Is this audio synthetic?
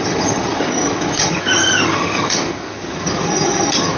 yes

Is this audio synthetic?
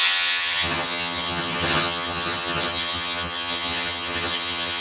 yes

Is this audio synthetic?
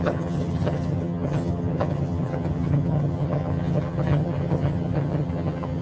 yes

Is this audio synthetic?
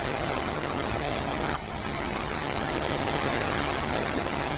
yes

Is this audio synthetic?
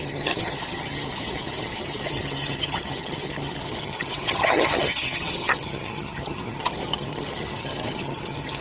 yes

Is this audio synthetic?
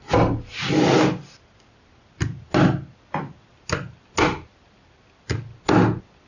no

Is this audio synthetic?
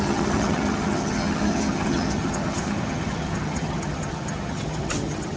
yes